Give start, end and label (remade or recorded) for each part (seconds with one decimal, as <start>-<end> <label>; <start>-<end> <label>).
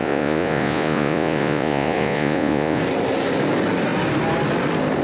0.0-2.8 remade; 2.8-5.0 recorded